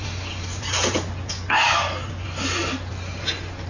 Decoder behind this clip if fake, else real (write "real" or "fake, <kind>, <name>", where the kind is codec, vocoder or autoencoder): real